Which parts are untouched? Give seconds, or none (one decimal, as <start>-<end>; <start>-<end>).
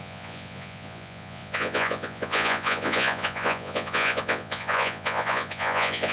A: none